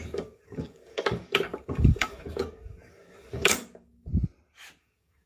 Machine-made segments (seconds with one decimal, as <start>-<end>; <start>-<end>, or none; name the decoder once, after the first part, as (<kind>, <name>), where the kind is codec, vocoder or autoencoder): 0.0-4.1 (codec, DAC); 4.8-5.3